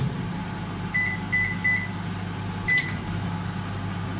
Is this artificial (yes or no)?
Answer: no